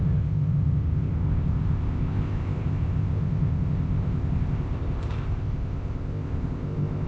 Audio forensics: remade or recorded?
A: remade